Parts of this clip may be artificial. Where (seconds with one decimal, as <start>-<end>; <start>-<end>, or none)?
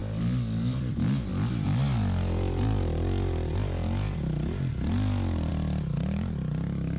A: 0.0-0.9